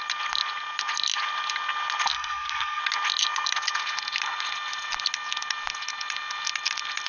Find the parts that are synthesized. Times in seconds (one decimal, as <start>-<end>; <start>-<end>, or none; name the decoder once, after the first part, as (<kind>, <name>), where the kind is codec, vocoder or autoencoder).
2.1-2.8 (codec, SNAC)